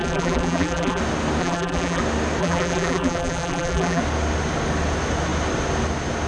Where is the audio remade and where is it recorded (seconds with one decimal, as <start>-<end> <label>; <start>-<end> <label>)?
0.0-1.0 remade; 1.0-1.4 recorded; 1.4-2.0 remade; 2.0-2.4 recorded; 2.4-4.0 remade; 4.0-6.3 recorded